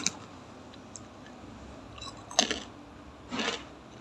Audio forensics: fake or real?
real